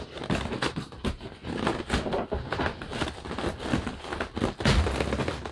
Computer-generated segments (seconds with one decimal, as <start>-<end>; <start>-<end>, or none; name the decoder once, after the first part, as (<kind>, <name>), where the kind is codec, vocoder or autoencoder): none